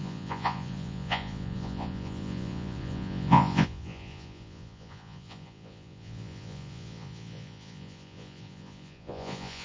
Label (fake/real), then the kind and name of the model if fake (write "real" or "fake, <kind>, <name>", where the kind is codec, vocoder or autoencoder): fake, vocoder, Vocos